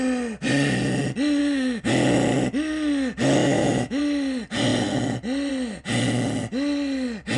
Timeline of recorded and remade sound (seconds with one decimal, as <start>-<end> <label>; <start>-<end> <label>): 0.0-1.4 recorded; 1.4-1.9 remade; 1.9-3.4 recorded; 3.4-4.0 remade; 4.0-7.4 recorded